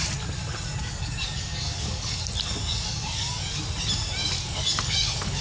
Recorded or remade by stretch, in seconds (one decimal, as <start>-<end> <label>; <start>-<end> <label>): 0.0-0.8 recorded; 0.8-2.2 remade; 2.2-2.6 recorded; 2.6-3.6 remade; 3.6-4.2 recorded; 4.2-5.4 remade